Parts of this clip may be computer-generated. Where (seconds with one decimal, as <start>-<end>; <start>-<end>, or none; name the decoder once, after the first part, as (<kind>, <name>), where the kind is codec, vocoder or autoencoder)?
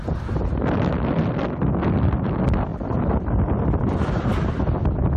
none